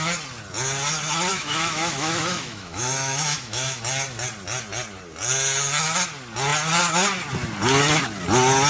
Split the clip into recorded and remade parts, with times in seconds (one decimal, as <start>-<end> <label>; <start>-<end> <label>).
0.0-1.3 recorded; 1.3-3.8 remade; 3.8-8.7 recorded